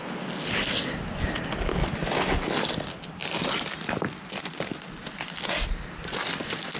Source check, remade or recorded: recorded